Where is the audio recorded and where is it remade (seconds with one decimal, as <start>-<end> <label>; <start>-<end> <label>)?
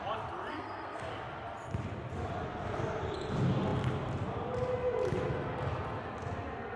0.0-0.5 recorded; 0.5-1.1 remade; 1.1-6.8 recorded